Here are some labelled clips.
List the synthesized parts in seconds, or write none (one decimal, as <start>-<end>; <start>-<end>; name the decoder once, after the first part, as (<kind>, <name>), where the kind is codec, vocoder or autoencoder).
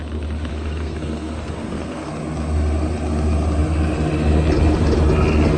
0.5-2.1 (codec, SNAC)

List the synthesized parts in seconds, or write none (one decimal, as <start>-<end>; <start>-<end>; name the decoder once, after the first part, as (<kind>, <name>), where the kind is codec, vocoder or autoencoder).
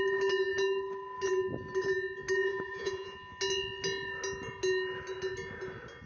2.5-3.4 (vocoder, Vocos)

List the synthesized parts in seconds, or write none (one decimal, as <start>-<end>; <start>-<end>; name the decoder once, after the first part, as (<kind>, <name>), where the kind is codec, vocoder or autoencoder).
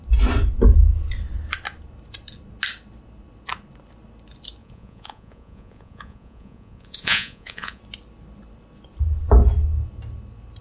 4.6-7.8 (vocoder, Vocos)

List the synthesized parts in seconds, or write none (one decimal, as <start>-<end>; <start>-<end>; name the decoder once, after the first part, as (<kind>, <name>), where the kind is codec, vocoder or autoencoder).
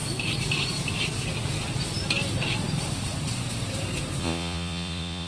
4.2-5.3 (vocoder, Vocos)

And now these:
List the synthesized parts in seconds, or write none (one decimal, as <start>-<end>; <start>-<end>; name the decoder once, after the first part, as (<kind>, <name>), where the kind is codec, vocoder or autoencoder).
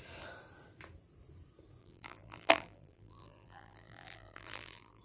1.8-5.0 (vocoder, BigVGAN v2)